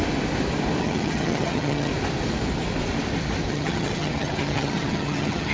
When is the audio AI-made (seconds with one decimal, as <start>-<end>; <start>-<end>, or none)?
0.8-1.9; 3.5-5.5